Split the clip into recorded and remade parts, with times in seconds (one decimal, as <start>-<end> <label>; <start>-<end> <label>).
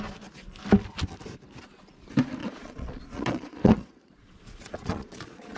0.0-2.4 recorded; 2.4-5.6 remade